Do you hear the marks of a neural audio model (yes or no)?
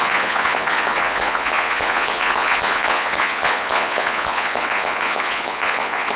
yes